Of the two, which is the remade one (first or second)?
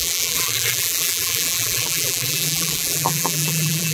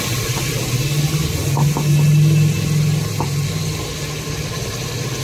first